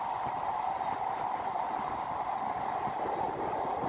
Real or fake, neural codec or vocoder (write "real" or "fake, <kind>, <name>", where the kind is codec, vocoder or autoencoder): real